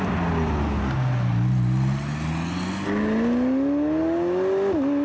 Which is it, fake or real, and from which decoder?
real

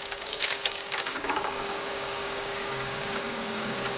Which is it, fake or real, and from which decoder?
fake, codec, DAC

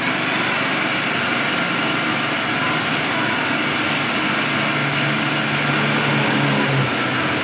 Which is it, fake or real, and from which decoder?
real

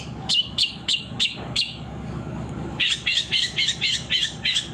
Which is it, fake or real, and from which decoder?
fake, codec, DAC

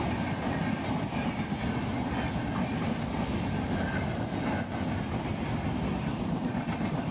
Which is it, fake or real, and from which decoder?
real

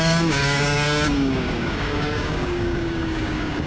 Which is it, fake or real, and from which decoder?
fake, codec, DAC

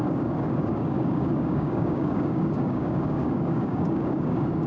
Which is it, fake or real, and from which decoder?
fake, codec, DAC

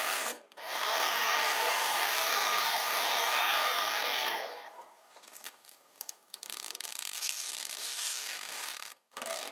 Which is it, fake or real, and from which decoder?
fake, codec, DAC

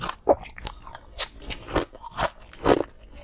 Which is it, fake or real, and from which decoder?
real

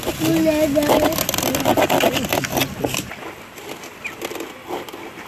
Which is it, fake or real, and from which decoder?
real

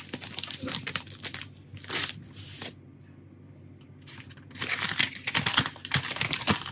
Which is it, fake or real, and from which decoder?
real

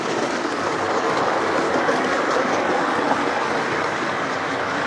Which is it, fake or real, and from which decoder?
fake, codec, DAC